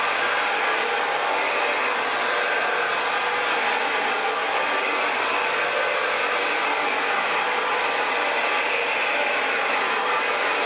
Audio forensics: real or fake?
real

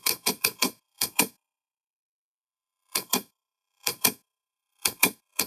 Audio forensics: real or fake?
fake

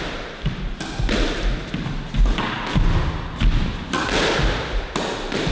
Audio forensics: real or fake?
real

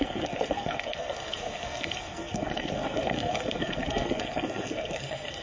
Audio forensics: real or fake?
fake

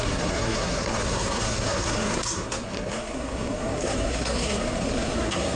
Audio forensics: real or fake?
fake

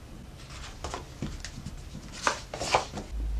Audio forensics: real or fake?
real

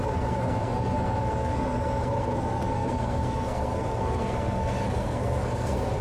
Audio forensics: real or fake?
fake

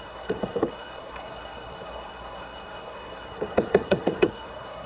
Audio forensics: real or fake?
fake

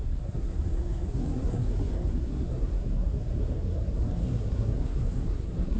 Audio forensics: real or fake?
fake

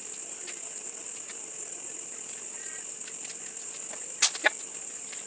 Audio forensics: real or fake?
real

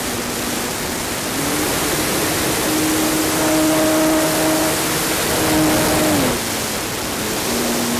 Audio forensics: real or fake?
real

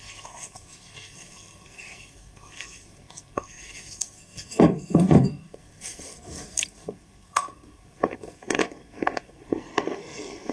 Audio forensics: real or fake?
fake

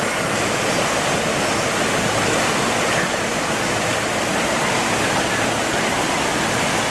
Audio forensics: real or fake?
real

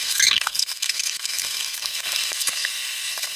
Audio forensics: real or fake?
fake